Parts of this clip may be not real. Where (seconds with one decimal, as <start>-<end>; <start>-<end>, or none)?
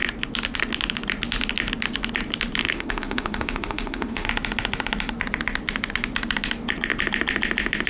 2.6-4.3